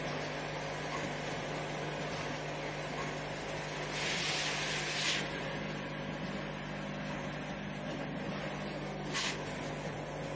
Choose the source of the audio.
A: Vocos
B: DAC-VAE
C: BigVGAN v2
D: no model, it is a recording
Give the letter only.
D